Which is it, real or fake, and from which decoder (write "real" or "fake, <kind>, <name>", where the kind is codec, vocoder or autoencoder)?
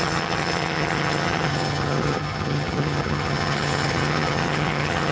fake, vocoder, HiFi-GAN